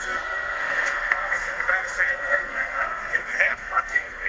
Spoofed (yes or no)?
yes